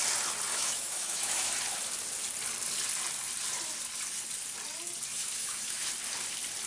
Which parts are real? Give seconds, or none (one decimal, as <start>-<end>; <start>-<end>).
0.0-0.5; 1.5-5.1; 5.9-6.7